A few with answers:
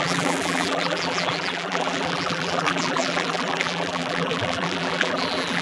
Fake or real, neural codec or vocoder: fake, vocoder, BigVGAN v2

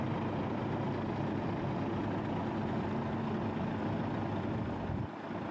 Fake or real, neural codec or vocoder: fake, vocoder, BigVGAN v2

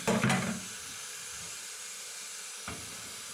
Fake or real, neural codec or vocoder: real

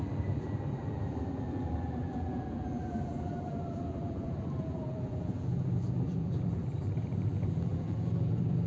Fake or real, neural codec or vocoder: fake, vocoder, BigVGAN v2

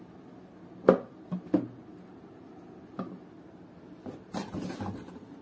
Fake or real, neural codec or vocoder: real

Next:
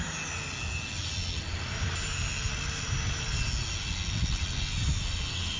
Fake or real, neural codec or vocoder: real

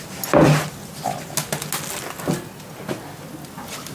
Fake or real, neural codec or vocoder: real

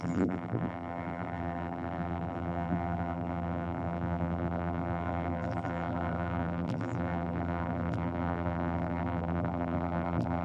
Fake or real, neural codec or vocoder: fake, vocoder, BigVGAN v2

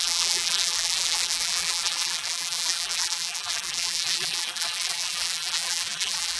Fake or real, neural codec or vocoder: fake, vocoder, BigVGAN v2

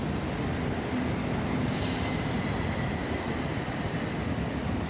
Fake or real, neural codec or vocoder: real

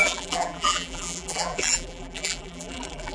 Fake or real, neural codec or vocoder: fake, vocoder, BigVGAN v2